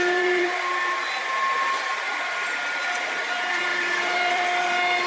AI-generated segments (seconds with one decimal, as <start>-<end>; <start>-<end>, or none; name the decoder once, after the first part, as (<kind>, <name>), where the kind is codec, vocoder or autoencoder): 0.0-1.4 (vocoder, BigVGAN v2); 2.1-5.1